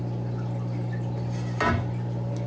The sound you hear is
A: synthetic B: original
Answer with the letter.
B